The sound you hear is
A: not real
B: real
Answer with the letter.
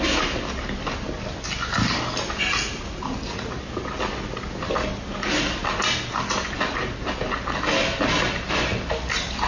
B